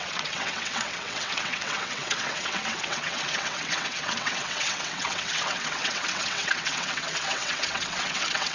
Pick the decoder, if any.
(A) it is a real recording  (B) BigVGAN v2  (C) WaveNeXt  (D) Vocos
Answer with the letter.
C